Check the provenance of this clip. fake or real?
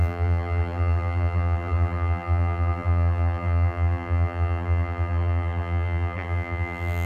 fake